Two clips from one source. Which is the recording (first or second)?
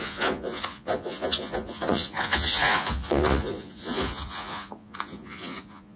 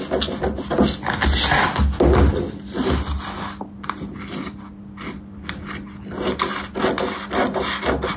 second